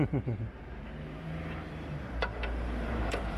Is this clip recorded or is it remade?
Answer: remade